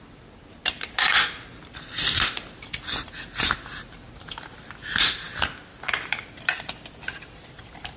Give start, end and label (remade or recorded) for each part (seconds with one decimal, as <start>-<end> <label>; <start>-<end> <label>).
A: 0.0-8.0 recorded